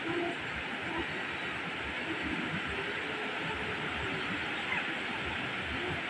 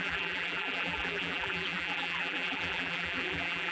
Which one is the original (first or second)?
first